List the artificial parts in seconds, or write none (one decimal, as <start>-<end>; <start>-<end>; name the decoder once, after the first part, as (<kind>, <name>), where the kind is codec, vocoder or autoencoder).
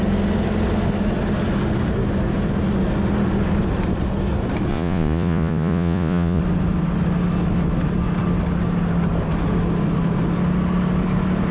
4.7-6.4 (vocoder, Vocos)